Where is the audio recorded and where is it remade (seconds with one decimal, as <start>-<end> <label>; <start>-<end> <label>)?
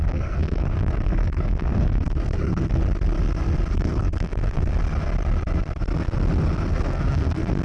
0.0-2.8 remade; 2.8-3.7 recorded; 3.7-4.7 remade; 4.7-6.7 recorded; 6.7-7.6 remade